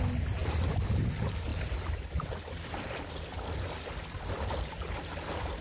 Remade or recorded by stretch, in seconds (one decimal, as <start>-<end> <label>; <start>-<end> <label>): 0.0-1.5 recorded; 1.5-4.9 remade; 4.9-5.6 recorded